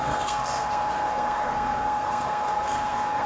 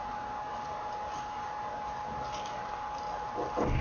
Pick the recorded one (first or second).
second